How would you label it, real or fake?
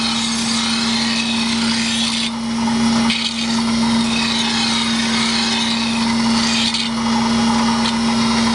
real